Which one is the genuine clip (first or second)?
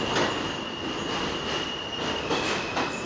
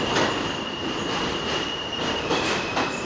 first